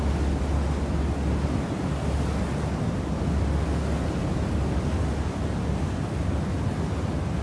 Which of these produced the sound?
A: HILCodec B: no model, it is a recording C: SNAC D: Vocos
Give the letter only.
B